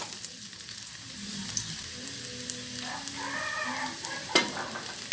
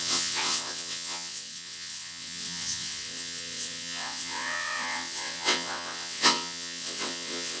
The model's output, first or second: second